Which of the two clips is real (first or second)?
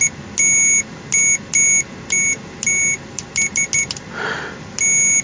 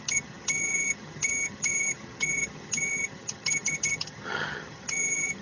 first